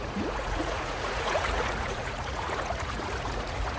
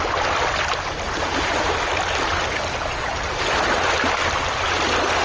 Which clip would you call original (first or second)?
second